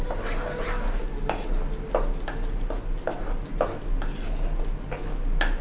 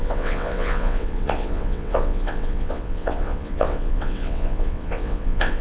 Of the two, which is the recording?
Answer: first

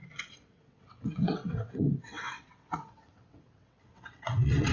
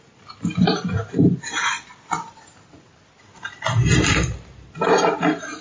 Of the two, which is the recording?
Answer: second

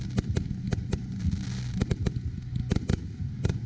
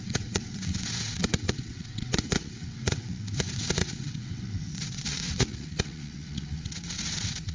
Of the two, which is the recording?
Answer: first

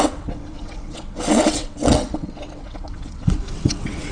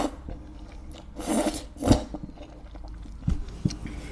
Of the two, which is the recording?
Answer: second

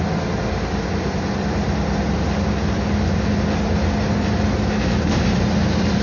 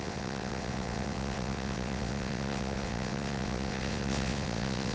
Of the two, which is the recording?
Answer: first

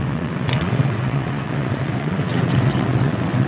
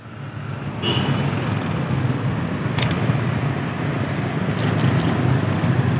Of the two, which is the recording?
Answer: second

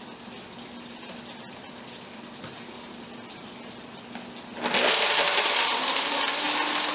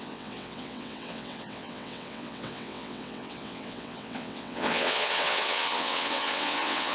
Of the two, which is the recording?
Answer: first